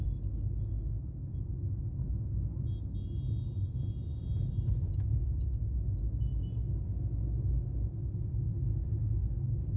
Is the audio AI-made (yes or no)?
no